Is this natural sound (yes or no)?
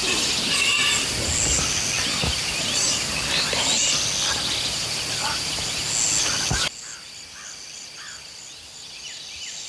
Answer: yes